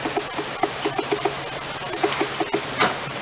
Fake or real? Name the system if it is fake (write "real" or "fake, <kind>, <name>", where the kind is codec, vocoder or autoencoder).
real